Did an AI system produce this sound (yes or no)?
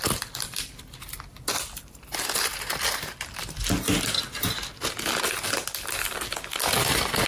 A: no